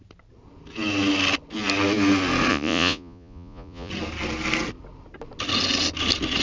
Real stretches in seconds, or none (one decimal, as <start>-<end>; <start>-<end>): 0.0-2.5; 3.9-6.4